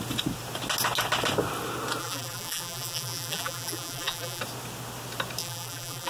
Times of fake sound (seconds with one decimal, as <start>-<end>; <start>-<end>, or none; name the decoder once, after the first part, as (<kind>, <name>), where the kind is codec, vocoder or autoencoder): 2.0-4.4 (vocoder, BigVGAN v2); 5.4-6.1

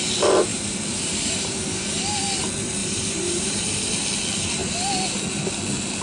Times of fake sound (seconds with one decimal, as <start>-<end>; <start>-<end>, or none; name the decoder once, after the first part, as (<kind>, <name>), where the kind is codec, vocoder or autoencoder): 0.5-2.2 (vocoder, BigVGAN v2); 2.8-3.6